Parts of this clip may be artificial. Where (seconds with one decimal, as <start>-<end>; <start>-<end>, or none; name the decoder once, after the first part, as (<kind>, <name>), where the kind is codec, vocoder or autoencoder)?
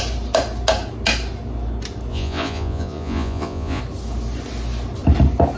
2.1-3.8 (vocoder, Vocos)